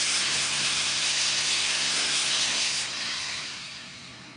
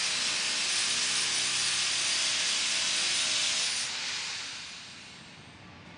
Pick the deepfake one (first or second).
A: first